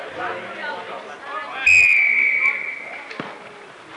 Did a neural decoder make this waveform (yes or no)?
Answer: no